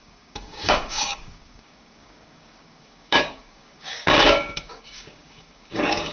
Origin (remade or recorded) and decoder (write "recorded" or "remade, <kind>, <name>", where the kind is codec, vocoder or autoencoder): remade, codec, DAC